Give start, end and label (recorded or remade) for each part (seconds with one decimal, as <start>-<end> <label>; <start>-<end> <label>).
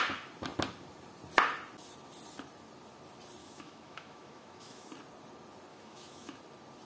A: 0.0-3.4 recorded; 3.4-4.9 remade; 4.9-5.7 recorded; 5.7-6.4 remade; 6.4-6.9 recorded